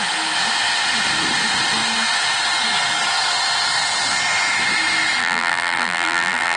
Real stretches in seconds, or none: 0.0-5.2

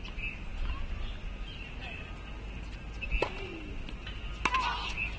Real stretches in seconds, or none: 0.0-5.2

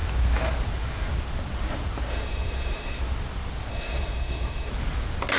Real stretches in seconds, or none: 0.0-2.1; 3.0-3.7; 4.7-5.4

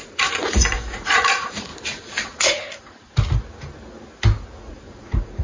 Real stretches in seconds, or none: 1.7-2.4; 3.1-4.7

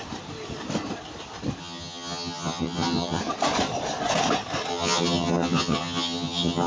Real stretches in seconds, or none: 0.0-1.6; 3.2-4.7

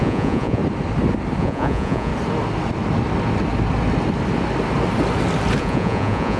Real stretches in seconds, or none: 0.6-1.4; 2.1-5.6

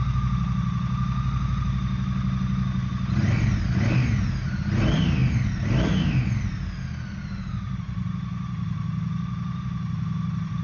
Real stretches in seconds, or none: 0.0-10.6